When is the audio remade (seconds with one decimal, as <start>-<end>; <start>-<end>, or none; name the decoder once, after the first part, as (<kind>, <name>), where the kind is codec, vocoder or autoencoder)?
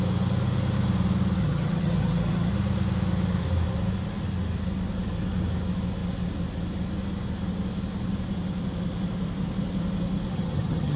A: 1.4-2.5 (vocoder, HiFi-GAN); 10.3-11.0